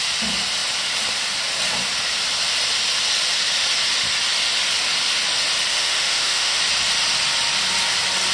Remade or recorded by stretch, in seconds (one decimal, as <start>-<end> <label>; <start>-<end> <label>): 0.0-5.7 recorded; 5.7-6.6 remade; 6.6-8.3 recorded